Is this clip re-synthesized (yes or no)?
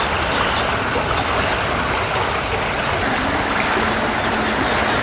no